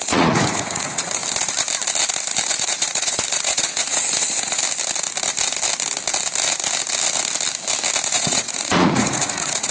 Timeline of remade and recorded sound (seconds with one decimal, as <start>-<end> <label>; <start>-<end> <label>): 0.0-1.2 remade; 1.2-2.5 recorded; 2.5-4.6 remade; 4.6-8.1 recorded; 8.1-9.7 remade